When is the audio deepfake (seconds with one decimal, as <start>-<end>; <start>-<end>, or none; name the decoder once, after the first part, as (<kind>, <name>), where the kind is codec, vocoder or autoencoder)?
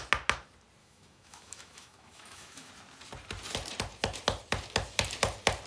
0.8-2.7 (autoencoder, DAC-VAE)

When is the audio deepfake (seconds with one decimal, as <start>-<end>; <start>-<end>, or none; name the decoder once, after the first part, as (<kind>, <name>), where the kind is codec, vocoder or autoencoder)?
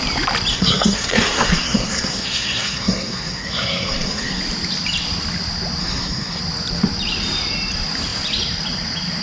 0.5-4.4 (codec, SNAC); 5.8-6.4